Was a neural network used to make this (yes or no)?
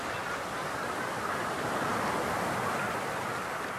no